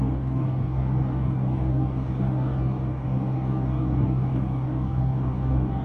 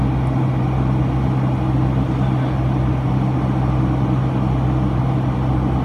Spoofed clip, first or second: first